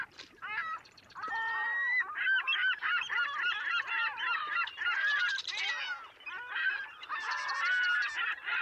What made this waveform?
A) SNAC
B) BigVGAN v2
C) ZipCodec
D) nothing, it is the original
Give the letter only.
B